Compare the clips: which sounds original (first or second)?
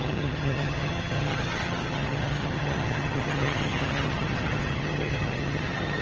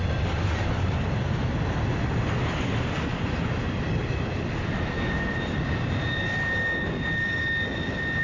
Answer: second